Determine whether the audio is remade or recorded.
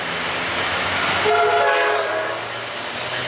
recorded